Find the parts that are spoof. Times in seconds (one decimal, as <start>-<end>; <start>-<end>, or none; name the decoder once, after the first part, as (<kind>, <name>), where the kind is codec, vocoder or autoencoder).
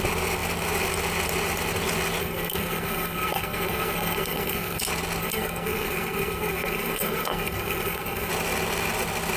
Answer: 2.2-4.8 (codec, SNAC); 5.2-8.3